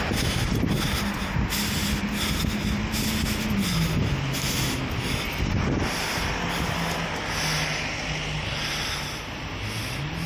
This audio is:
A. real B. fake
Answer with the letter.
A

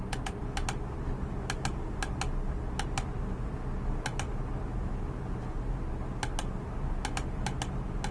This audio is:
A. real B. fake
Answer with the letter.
A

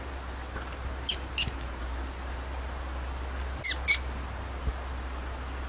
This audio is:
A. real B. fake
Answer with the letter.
A